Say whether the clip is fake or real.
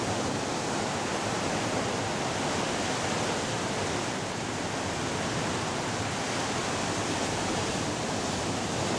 fake